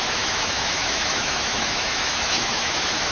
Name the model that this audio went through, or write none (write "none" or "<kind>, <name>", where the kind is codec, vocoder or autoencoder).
autoencoder, DAC-VAE